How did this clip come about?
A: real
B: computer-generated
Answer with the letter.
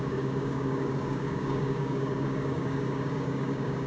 B